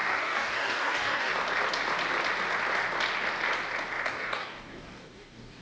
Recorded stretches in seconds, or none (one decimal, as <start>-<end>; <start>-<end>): 1.3-4.1